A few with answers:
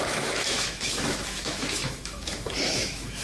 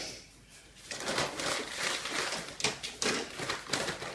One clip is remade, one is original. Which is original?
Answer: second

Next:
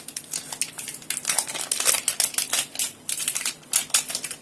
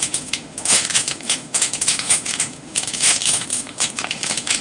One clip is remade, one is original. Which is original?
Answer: first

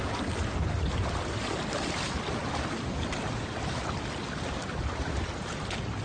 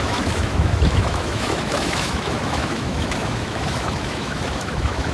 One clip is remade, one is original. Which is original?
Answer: first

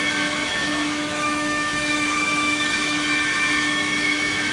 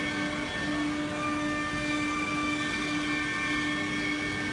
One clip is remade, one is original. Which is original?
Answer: second